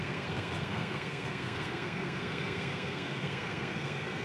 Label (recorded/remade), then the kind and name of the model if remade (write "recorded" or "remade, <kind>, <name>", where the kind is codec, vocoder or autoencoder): remade, codec, SNAC